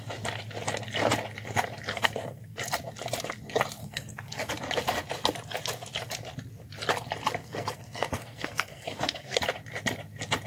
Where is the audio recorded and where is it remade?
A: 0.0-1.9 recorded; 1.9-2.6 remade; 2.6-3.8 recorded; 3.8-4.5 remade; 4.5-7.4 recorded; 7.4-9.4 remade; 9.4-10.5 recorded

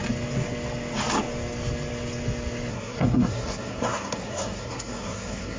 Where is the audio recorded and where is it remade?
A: 0.0-2.7 recorded; 2.7-5.6 remade

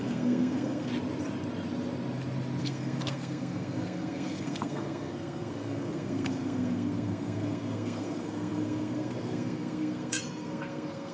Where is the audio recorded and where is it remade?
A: 0.0-0.9 remade; 0.9-2.6 recorded; 2.6-11.1 remade